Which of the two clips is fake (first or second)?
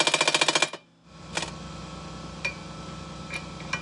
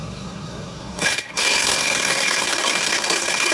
second